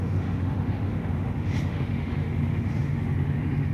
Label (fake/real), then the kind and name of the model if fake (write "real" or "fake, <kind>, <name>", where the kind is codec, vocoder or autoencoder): fake, autoencoder, DAC-VAE